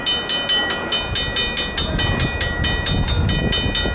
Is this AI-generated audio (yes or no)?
no